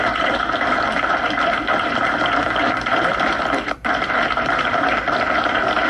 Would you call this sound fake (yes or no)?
no